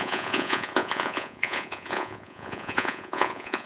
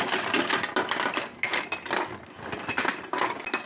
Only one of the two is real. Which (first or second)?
second